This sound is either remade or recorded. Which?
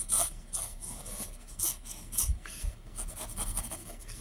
remade